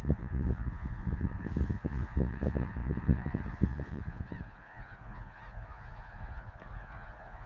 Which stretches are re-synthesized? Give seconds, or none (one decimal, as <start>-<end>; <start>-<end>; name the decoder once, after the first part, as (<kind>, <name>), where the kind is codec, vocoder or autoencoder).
0.0-7.5 (vocoder, Vocos)